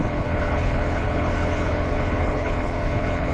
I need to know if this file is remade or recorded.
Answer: remade